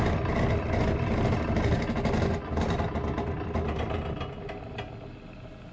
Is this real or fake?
real